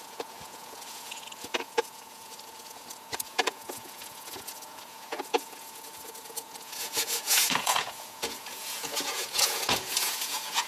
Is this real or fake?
fake